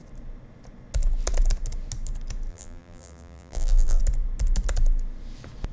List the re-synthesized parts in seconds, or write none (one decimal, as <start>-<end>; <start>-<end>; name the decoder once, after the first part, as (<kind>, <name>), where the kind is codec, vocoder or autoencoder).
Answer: 2.5-4.0 (vocoder, BigVGAN v2)